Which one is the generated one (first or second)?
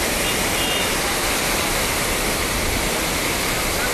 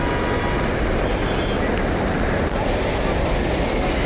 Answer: first